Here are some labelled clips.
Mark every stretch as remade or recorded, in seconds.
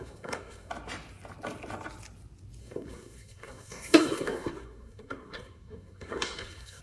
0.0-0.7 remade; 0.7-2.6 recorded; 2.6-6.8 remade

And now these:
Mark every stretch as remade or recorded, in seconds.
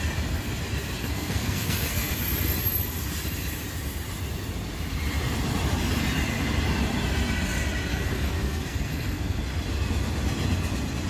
0.0-1.0 recorded; 1.0-2.1 remade; 2.1-7.9 recorded; 7.9-9.4 remade; 9.4-11.1 recorded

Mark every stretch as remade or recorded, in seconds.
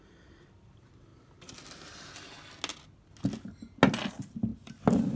0.0-5.2 recorded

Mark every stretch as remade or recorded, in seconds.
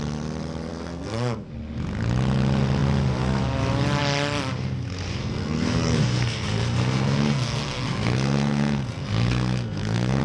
0.0-0.7 recorded; 0.7-1.5 remade; 1.5-5.2 recorded; 5.2-10.2 remade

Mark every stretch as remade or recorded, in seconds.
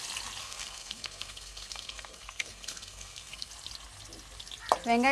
0.0-0.4 recorded; 0.4-3.5 remade; 3.5-5.1 recorded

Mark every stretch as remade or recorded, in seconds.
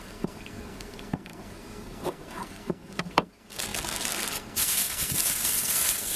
0.0-6.2 remade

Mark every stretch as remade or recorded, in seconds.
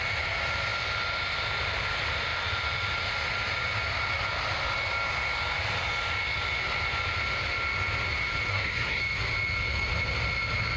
0.0-8.5 recorded; 8.5-9.0 remade; 9.0-10.8 recorded